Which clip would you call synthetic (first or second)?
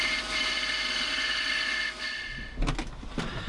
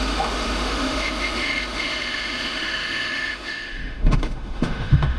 second